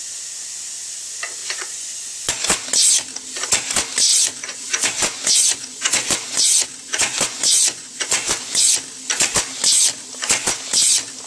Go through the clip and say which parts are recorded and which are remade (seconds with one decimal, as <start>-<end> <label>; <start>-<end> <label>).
0.0-1.4 recorded; 1.4-2.3 remade; 2.3-4.1 recorded; 4.1-8.6 remade; 8.6-11.3 recorded